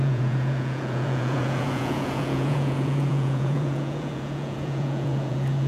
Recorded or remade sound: remade